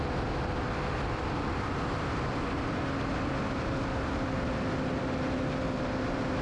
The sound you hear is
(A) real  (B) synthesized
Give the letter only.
A